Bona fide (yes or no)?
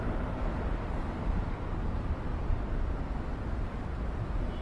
yes